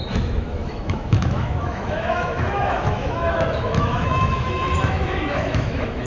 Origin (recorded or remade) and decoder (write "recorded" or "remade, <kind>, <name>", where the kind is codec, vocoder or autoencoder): remade, autoencoder, DAC-VAE